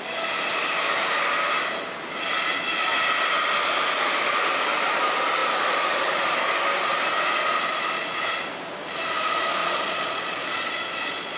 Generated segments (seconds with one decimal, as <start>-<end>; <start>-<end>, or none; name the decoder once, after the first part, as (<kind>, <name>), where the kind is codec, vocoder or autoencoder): 9.6-11.4 (vocoder, Vocos)